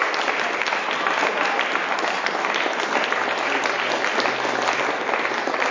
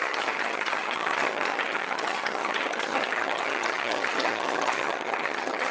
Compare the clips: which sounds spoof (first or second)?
second